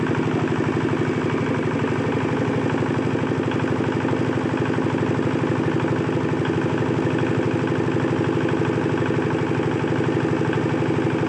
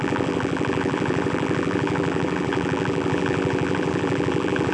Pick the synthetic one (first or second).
second